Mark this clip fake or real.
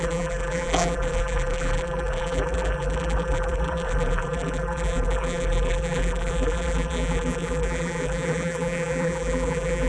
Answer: fake